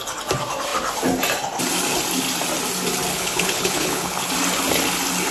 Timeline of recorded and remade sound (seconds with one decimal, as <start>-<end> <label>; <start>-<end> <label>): 0.0-3.1 recorded; 3.1-4.3 remade; 4.3-5.3 recorded